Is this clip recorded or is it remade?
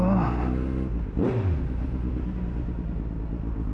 recorded